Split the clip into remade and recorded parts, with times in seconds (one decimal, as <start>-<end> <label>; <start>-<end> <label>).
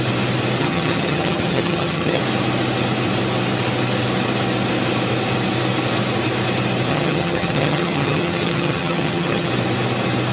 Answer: 0.0-0.6 recorded; 0.6-2.2 remade; 2.2-6.9 recorded; 6.9-9.5 remade; 9.5-10.3 recorded